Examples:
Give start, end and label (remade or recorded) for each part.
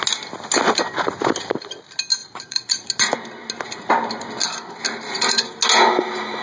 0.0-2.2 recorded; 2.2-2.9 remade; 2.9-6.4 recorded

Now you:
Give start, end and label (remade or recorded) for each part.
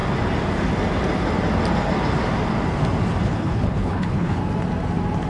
0.0-3.2 recorded; 3.2-4.4 remade; 4.4-5.3 recorded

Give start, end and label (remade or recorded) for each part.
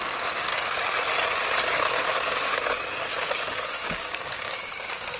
0.0-0.5 remade; 0.5-1.6 recorded; 1.6-5.2 remade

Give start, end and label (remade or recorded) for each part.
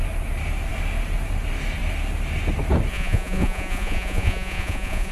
0.0-2.9 recorded; 2.9-5.1 remade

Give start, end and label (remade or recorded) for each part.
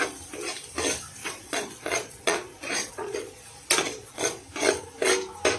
0.0-1.2 recorded; 1.2-3.4 remade; 3.4-3.8 recorded; 3.8-4.4 remade; 4.4-5.6 recorded